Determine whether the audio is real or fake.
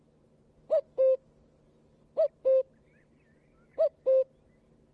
real